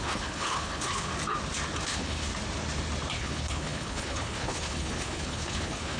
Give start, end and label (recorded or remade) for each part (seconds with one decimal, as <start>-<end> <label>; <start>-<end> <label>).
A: 0.0-1.1 remade; 1.1-1.8 recorded; 1.8-2.3 remade; 2.3-3.1 recorded; 3.1-6.0 remade